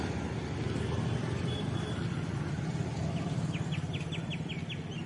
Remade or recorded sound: recorded